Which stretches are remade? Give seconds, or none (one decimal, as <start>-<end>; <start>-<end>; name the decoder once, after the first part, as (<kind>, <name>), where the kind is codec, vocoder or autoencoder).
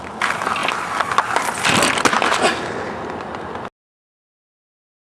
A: none